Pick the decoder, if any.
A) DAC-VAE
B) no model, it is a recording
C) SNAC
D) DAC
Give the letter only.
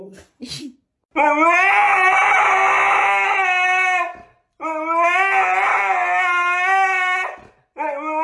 B